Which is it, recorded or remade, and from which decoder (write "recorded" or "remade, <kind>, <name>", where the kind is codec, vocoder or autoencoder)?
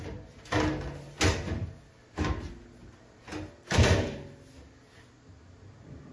recorded